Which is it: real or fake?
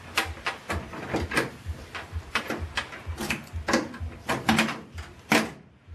real